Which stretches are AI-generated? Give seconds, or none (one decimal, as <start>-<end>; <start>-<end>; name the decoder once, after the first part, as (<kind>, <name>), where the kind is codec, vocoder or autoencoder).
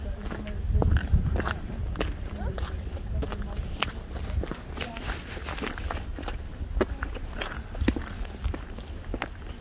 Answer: none